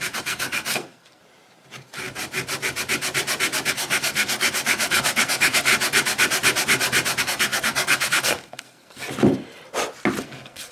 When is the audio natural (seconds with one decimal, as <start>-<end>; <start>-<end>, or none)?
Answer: 1.2-3.7; 5.7-7.2; 9.0-10.2